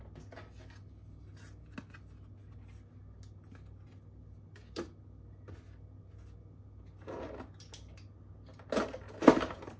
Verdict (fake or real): real